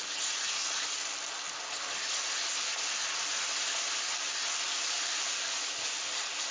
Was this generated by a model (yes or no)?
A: no